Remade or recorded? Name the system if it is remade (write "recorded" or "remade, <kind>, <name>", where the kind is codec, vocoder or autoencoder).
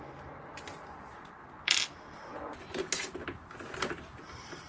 recorded